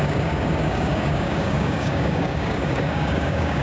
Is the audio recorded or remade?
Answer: remade